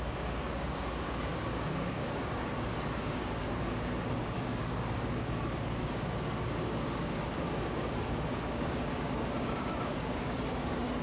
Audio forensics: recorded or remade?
remade